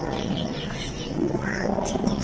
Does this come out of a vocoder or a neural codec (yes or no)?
yes